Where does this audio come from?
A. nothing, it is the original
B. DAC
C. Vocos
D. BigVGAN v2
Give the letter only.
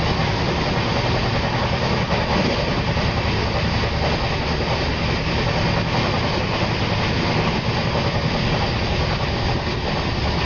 A